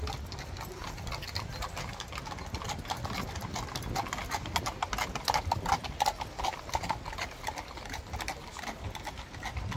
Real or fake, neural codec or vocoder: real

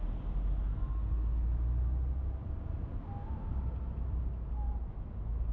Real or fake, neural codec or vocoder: real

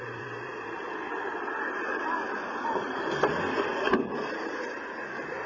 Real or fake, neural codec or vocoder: fake, vocoder, BigVGAN v2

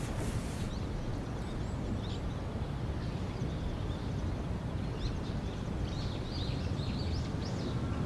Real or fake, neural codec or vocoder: real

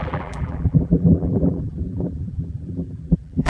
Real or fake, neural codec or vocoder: fake, vocoder, BigVGAN v2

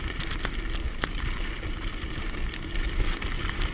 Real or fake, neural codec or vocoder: real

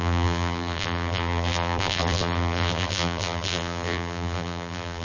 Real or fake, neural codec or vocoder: fake, vocoder, BigVGAN v2